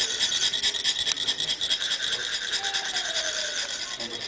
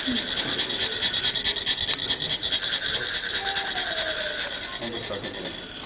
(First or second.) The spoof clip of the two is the first